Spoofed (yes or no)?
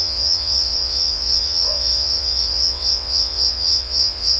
yes